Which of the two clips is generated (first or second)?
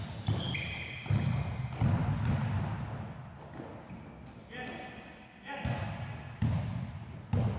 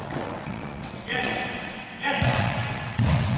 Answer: second